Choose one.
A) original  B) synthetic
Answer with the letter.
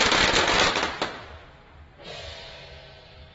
A